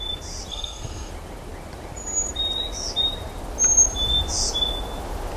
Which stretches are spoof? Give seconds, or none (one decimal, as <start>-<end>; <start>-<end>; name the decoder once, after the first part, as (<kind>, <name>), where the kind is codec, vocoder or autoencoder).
0.5-1.1 (codec, SNAC)